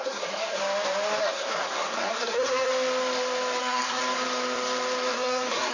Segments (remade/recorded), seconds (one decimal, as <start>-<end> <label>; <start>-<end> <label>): 0.0-0.6 remade; 0.6-1.2 recorded; 1.2-2.7 remade; 2.7-3.6 recorded; 3.6-4.0 remade; 4.0-5.1 recorded; 5.1-5.7 remade